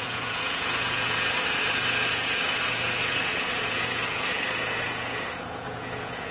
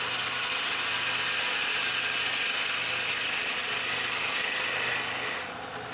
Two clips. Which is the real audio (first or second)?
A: second